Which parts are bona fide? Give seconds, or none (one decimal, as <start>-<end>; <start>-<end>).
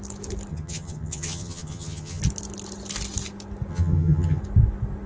0.0-0.5; 2.2-3.7; 4.4-5.1